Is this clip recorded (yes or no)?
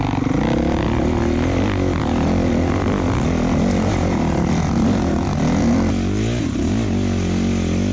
yes